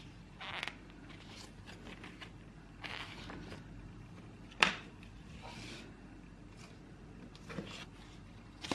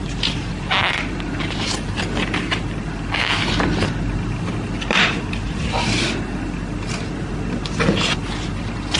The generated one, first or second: first